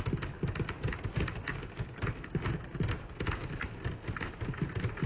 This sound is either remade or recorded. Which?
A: recorded